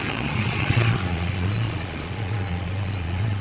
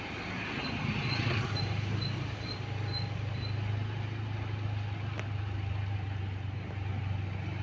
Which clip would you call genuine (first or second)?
second